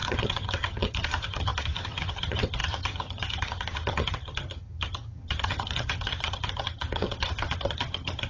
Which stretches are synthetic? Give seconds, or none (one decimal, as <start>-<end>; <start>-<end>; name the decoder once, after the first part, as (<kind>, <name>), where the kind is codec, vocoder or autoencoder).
0.0-8.3 (vocoder, HiFi-GAN)